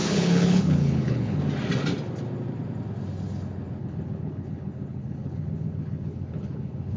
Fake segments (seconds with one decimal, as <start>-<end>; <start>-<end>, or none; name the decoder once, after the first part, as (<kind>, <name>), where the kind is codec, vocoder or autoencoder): 0.0-1.4 (codec, HILCodec); 3.8-7.0